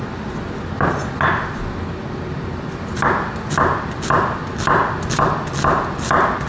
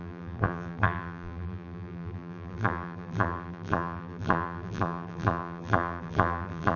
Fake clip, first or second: second